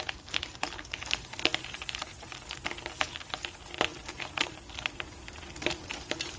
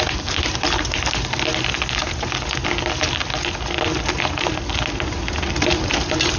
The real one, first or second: second